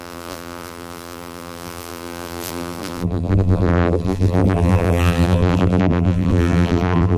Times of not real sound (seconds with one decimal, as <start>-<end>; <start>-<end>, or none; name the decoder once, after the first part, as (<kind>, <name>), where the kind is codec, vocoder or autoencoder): 0.0-7.2 (vocoder, BigVGAN v2)